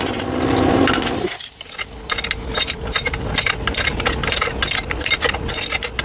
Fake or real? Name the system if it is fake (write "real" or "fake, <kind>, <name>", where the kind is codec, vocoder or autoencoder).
fake, vocoder, BigVGAN v2